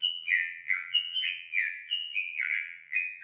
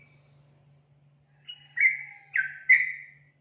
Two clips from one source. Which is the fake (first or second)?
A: first